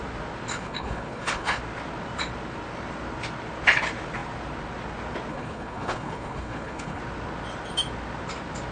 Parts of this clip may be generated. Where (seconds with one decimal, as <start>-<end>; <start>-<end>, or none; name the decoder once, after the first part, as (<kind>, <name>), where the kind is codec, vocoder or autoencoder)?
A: 0.5-1.6 (codec, HILCodec); 5.3-7.0